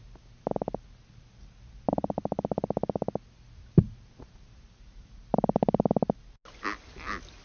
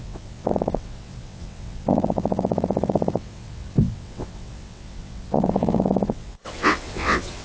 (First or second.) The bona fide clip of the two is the first